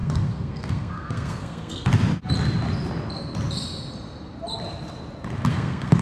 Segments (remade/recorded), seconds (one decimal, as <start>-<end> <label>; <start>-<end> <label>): 0.0-1.9 remade; 1.9-5.5 recorded; 5.5-6.0 remade